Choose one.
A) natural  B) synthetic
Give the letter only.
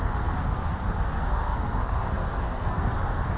B